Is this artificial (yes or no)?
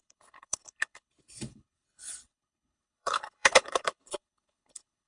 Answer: yes